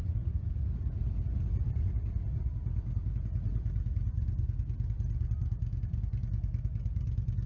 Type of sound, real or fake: real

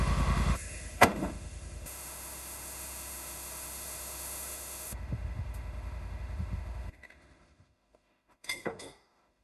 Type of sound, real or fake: fake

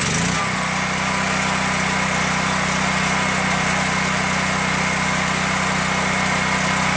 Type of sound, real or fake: real